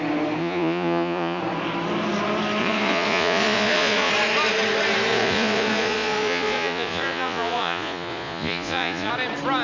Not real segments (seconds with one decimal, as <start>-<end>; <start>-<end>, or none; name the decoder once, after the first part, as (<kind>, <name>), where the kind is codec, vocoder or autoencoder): 0.4-1.4 (vocoder, Vocos); 2.6-4.1; 5.1-9.1